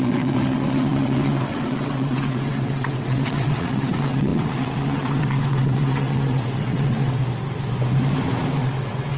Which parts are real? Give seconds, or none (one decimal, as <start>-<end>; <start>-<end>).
7.2-8.6